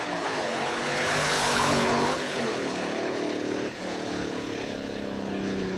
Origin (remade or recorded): remade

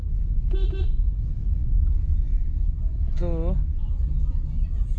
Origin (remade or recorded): recorded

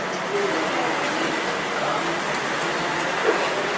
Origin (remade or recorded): recorded